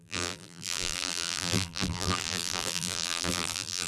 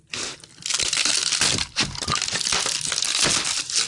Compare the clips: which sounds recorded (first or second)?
second